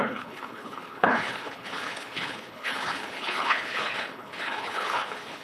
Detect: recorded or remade remade